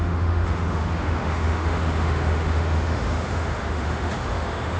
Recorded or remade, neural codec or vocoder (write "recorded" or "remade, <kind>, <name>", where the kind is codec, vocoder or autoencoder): remade, autoencoder, DAC-VAE